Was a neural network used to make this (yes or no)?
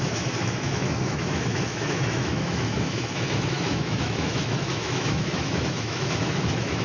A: yes